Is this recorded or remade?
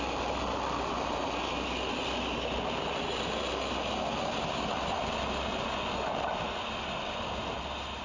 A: recorded